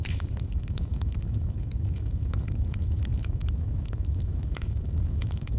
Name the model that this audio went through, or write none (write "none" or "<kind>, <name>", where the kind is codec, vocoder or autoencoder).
autoencoder, DAC-VAE